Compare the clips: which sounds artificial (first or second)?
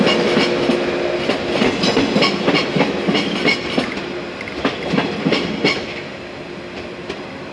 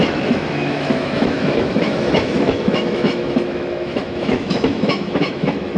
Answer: second